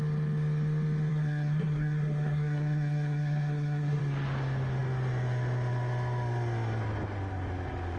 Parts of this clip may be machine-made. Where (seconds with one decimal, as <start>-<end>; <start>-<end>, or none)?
1.1-4.0